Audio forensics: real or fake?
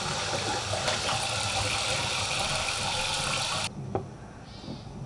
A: real